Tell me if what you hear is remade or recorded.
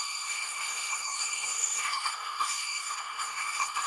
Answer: remade